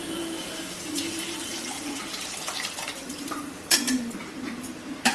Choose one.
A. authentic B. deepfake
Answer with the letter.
B